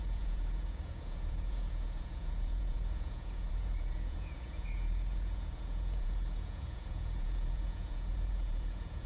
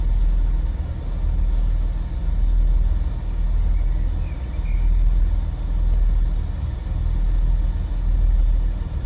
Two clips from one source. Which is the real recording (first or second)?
second